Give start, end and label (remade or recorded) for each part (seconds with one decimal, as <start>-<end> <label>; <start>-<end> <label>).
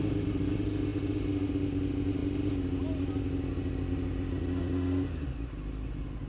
0.0-6.3 recorded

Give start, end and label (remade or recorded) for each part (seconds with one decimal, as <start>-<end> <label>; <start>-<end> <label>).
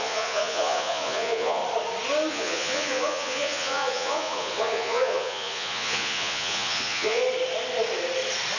0.0-1.6 remade; 1.6-2.3 recorded; 2.3-7.2 remade; 7.2-8.6 recorded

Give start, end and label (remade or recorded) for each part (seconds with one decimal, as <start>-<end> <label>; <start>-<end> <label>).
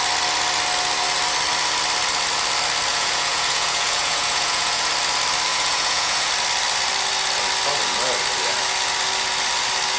0.0-2.9 recorded; 2.9-4.9 remade; 4.9-5.5 recorded; 5.5-6.3 remade; 6.3-10.0 recorded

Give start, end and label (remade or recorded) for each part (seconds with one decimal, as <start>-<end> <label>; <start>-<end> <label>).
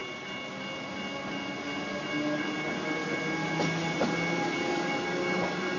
0.0-5.8 recorded